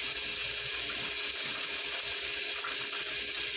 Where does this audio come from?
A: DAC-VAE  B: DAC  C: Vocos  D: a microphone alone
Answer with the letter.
D